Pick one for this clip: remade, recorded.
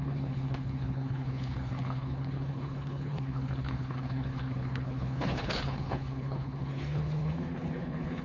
remade